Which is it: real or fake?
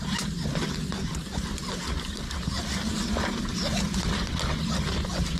real